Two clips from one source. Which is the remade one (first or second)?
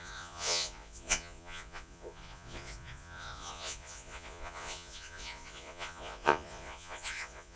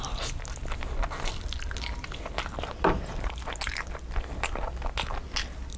first